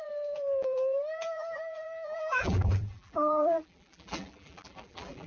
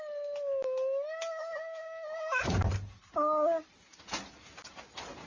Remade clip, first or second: first